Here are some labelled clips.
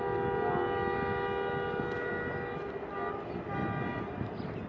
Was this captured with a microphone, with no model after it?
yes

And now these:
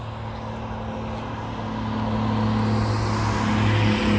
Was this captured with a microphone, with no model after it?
yes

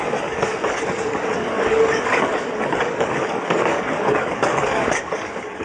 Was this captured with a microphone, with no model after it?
no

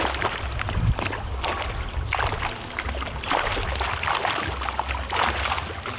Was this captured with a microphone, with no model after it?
yes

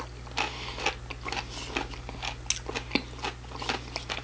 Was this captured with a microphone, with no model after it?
yes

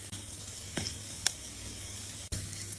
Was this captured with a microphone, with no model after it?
no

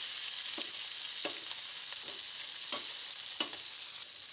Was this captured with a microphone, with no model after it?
yes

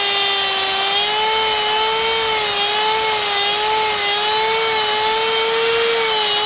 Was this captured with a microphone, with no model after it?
yes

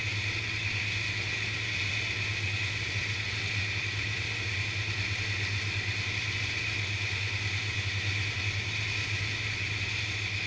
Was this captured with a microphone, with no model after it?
yes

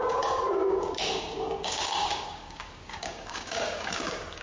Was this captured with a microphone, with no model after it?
no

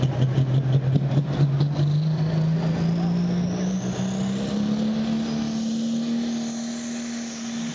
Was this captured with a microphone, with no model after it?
yes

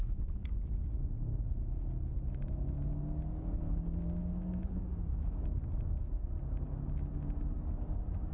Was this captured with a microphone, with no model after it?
yes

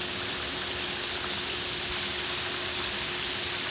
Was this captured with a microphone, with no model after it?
yes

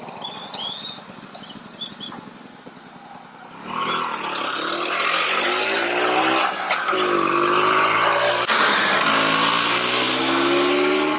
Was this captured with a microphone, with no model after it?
yes